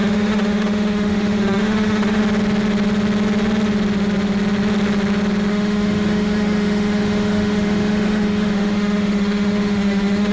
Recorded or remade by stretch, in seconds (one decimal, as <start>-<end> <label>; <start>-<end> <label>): 0.0-2.2 remade; 2.2-5.5 recorded; 5.5-10.3 remade